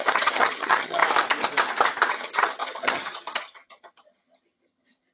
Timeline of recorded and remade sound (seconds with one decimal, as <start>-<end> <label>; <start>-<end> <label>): 0.0-1.0 remade; 1.0-2.1 recorded; 2.1-5.1 remade